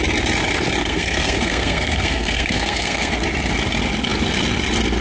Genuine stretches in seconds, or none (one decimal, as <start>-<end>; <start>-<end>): 0.0-0.8; 3.1-5.0